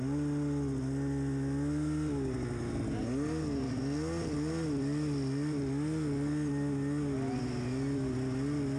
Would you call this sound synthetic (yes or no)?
no